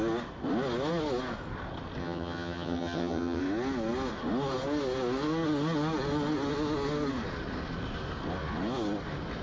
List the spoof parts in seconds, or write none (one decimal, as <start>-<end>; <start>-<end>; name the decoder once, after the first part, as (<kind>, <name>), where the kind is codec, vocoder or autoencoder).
2.0-3.4 (vocoder, HiFi-GAN)